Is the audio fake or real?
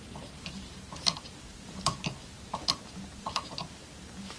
fake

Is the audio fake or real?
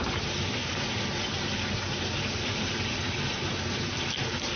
fake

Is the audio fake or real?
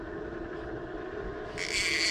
real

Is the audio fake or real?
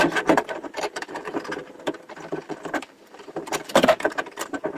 fake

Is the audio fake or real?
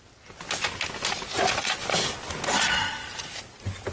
real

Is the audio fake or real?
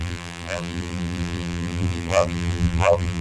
fake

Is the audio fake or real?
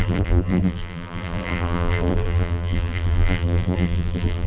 fake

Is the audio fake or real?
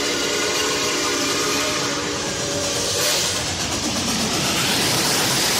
fake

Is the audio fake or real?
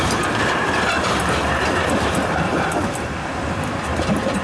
fake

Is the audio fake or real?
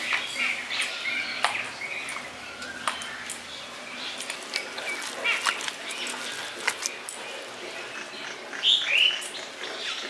real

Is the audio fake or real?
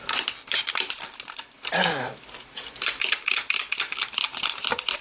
fake